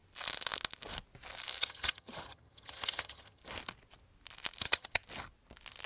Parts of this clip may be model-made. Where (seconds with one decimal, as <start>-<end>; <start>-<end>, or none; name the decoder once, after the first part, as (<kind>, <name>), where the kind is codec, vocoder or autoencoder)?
1.6-3.4 (vocoder, HiFi-GAN); 4.6-5.0